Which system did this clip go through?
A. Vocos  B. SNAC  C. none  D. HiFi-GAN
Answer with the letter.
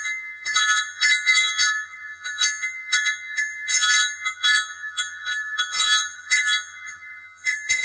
D